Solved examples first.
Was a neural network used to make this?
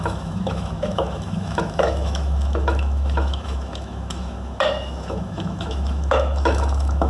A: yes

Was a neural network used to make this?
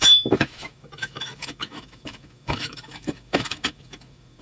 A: yes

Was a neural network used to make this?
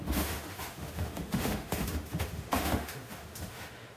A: yes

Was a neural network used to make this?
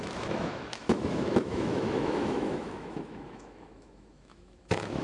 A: yes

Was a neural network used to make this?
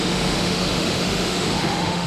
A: yes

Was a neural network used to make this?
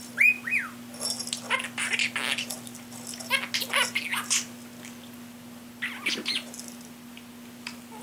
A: no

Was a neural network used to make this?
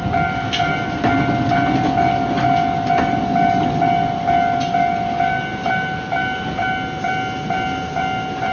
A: no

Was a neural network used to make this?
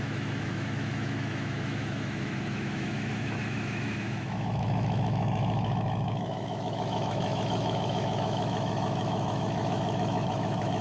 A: yes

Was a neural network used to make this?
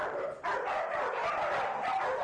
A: no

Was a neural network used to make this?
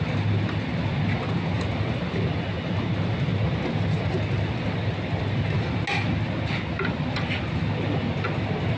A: no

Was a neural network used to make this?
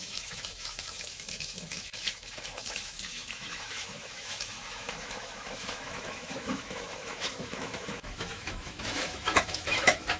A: yes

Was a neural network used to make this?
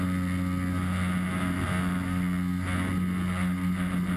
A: no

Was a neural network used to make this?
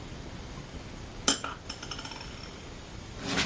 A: no